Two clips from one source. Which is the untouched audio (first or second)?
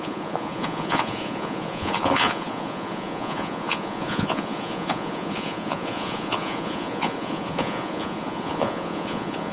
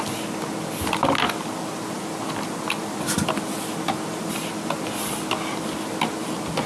second